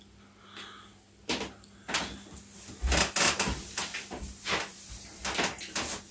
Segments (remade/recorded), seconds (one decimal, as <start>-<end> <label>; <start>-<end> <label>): 0.0-4.7 recorded; 4.7-6.1 remade